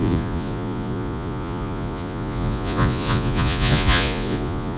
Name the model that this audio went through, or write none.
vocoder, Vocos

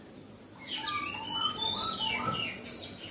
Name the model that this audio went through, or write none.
none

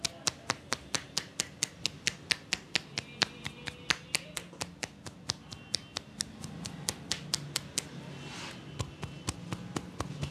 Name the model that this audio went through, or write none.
none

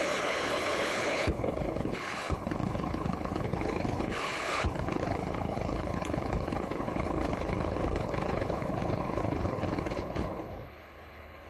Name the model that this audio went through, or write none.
codec, HILCodec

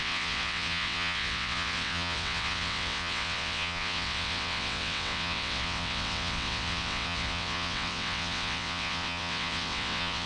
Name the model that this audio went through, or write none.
vocoder, WaveNeXt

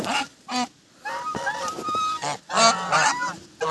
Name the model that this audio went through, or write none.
none